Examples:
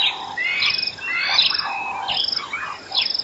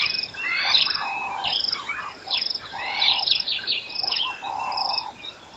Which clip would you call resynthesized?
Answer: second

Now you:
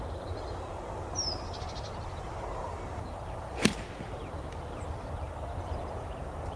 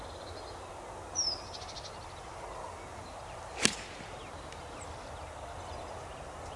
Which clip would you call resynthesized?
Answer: first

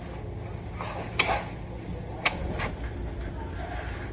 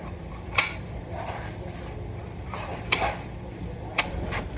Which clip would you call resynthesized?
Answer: second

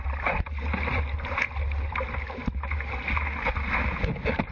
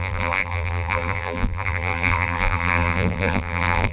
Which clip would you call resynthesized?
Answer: second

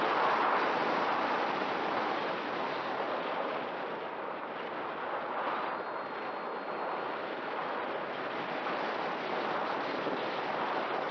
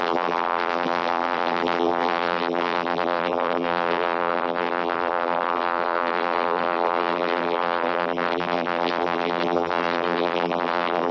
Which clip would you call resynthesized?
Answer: second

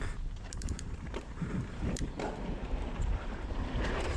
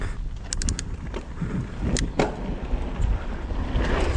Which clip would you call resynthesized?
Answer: first